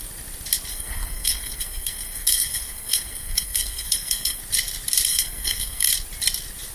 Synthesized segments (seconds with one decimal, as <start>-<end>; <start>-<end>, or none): 0.7-4.4; 5.1-5.9